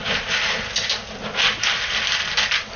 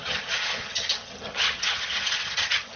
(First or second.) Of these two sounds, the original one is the first